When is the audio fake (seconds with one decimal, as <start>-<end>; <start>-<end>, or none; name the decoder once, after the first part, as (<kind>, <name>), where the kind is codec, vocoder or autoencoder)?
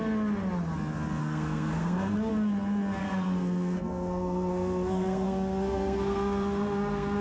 1.2-2.3 (codec, SNAC); 3.0-7.2